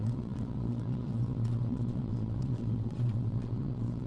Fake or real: fake